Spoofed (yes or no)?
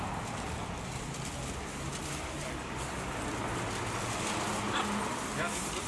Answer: no